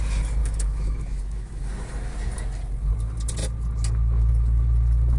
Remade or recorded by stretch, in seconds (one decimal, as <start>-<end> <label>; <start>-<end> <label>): 0.0-0.4 recorded; 0.4-1.7 remade; 1.7-5.2 recorded